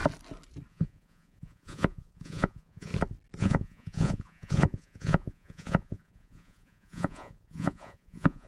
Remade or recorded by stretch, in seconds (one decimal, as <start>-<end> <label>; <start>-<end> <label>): 0.0-0.7 recorded; 0.7-2.9 remade; 2.9-3.4 recorded; 3.4-8.5 remade